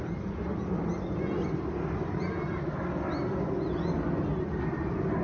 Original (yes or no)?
yes